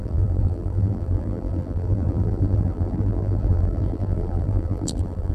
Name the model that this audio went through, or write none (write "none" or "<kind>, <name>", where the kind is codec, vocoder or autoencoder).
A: vocoder, BigVGAN v2